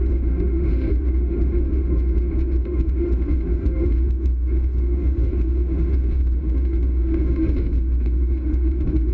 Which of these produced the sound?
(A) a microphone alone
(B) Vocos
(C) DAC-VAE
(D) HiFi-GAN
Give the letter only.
C